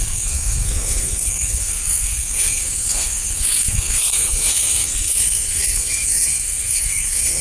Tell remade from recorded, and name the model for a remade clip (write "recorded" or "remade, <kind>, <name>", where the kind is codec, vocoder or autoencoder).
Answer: remade, codec, SNAC